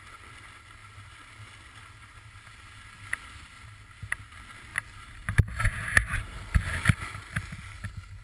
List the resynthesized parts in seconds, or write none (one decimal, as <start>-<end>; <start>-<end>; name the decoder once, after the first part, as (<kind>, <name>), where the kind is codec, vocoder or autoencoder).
none